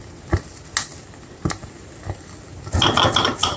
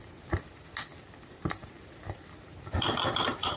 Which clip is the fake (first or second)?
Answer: second